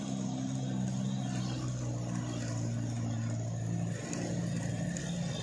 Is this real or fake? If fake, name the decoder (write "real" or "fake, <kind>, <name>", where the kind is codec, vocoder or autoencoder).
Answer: real